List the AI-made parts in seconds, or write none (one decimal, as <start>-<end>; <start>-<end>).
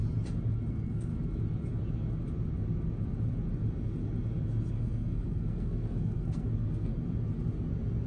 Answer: 0.7-1.1; 4.7-6.9